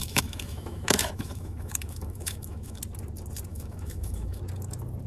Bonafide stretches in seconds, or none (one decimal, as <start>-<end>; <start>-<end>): 2.8-3.5; 4.4-5.1

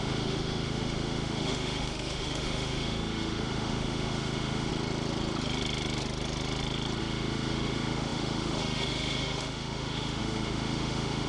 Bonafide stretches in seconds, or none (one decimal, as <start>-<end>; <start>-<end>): 4.7-7.0